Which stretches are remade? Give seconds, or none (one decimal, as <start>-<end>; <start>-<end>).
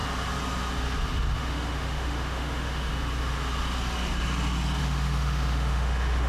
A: 1.3-2.9; 4.8-6.3